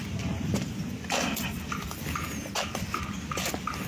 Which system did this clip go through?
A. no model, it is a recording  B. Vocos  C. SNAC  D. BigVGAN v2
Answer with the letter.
A